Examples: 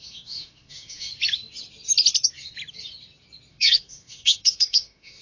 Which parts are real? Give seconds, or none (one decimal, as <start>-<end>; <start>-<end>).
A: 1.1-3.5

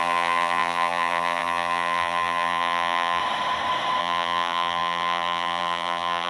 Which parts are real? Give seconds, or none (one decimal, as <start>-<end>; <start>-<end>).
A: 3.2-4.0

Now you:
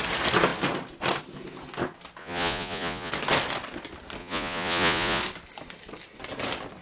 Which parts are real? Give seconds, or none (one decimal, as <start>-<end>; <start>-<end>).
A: 0.0-2.2; 3.1-4.2; 5.2-6.8